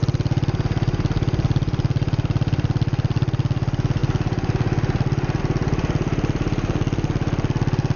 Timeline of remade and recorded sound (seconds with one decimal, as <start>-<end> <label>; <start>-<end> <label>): 0.0-8.0 recorded